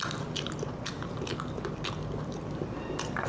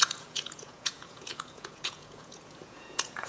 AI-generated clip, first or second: second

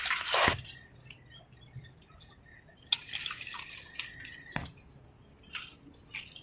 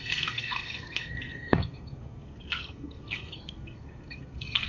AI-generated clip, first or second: second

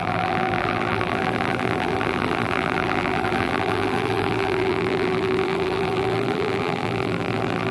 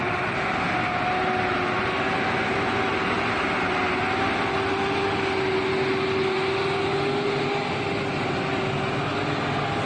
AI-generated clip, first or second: first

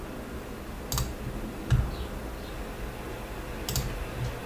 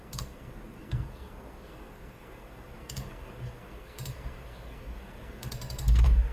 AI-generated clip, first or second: second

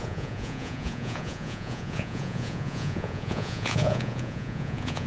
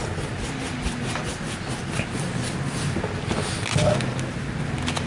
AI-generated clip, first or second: first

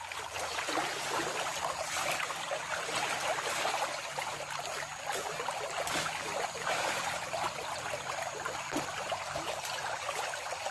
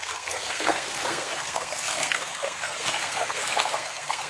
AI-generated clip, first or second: second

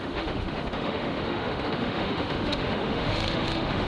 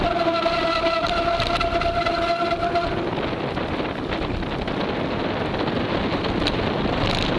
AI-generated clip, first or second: first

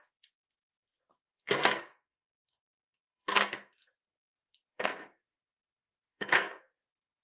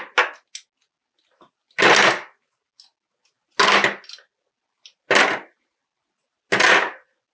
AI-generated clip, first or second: first